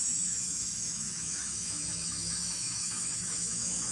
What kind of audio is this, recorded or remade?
remade